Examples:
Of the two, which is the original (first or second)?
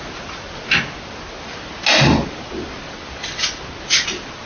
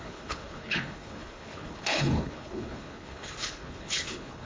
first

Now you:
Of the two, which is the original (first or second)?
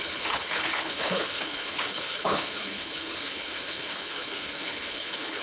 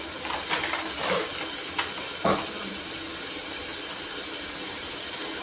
second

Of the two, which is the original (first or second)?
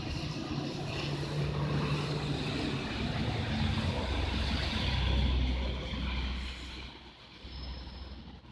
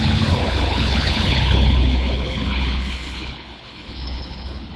first